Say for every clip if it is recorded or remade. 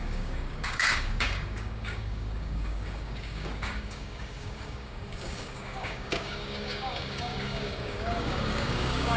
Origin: remade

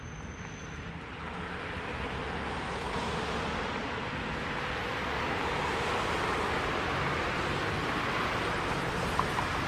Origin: recorded